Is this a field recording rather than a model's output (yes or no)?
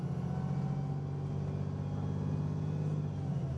yes